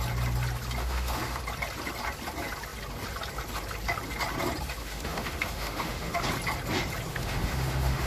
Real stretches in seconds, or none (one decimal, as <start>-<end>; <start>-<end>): 0.0-0.8; 1.4-4.8; 6.2-7.1